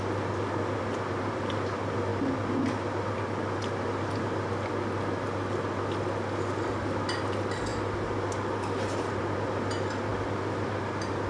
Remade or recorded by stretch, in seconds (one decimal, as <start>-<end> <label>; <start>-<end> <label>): 0.0-11.3 recorded

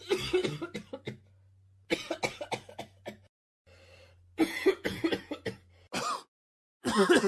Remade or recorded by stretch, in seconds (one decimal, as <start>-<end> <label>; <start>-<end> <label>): 0.0-4.4 recorded; 4.4-5.0 remade; 5.0-7.3 recorded